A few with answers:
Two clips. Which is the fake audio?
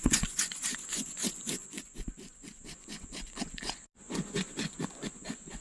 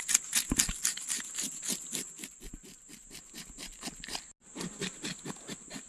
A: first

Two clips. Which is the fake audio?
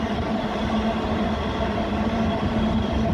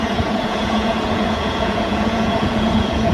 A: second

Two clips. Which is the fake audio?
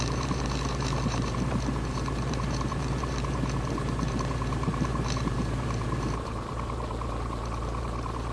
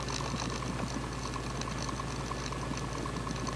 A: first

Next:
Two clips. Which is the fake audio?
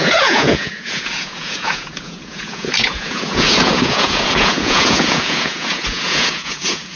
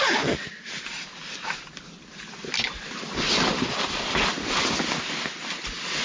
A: first